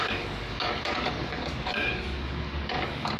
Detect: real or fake fake